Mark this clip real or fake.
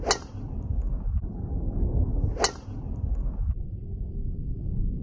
real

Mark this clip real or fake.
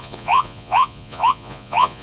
fake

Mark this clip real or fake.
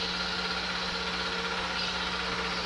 real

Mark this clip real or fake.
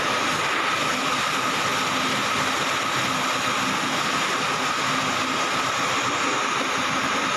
real